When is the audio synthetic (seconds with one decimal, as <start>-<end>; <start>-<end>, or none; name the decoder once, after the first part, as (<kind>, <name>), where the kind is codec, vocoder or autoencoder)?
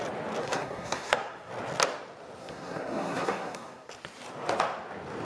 0.4-1.5 (codec, SNAC); 2.4-3.9